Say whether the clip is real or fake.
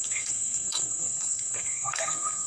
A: fake